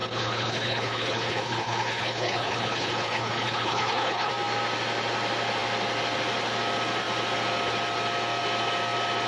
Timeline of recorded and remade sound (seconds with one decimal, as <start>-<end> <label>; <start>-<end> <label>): 0.0-4.3 remade; 4.3-9.3 recorded